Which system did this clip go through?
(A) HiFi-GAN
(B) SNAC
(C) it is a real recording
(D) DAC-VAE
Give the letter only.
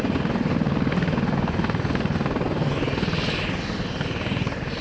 C